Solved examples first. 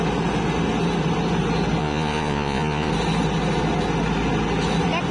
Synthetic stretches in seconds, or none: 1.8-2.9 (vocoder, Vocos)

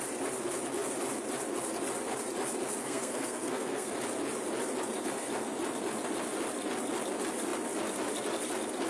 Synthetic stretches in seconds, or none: 2.8-3.9 (codec, SNAC)